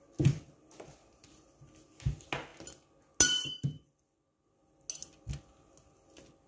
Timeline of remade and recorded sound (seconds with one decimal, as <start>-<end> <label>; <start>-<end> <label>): 0.0-6.5 recorded